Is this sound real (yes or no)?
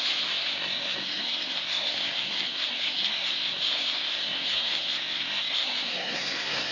no